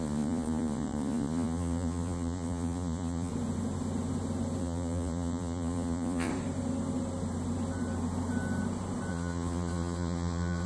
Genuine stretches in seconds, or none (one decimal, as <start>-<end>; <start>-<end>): 3.3-4.6; 6.3-9.1